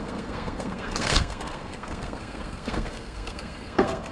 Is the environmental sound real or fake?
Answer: fake